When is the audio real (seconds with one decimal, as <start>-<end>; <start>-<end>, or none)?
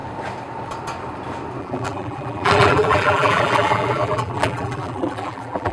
0.0-1.6